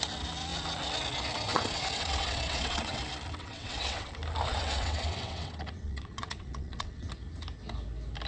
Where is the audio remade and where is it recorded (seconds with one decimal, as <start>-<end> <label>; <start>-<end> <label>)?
0.0-1.5 recorded; 1.5-3.0 remade; 3.0-3.4 recorded; 3.4-4.1 remade; 4.1-4.5 recorded; 4.5-7.1 remade; 7.1-8.3 recorded